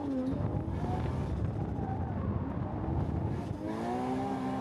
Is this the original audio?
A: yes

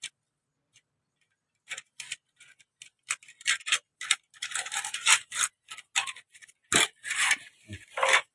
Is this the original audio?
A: yes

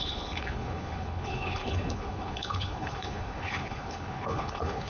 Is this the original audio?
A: no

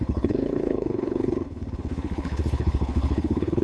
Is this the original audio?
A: no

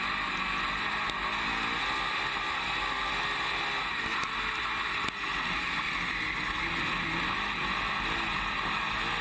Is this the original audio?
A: yes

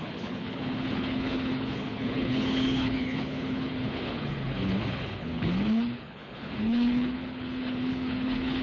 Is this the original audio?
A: no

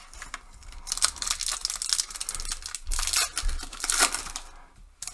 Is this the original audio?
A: yes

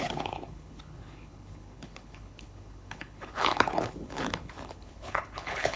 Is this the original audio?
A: no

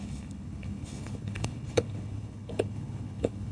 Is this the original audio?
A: no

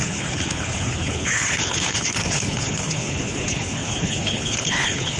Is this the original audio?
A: no